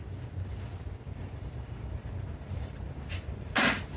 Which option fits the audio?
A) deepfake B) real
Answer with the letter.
B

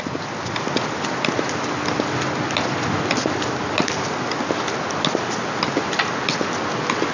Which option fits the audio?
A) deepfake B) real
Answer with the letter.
B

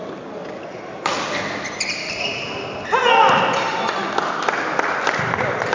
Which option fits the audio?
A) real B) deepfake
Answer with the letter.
A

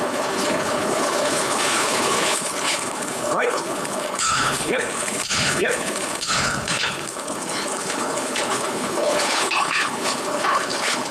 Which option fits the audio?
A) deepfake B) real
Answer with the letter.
A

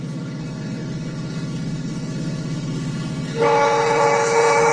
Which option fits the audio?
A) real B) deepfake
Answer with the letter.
B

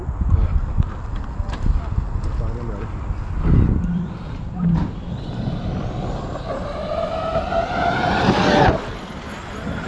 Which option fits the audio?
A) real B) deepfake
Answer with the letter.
A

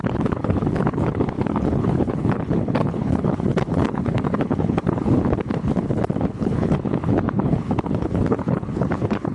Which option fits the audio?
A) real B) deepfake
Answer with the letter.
B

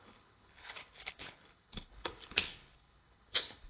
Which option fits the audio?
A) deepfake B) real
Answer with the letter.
A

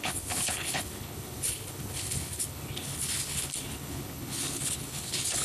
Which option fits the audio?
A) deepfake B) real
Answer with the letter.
A